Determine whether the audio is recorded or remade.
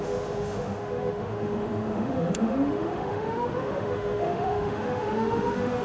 remade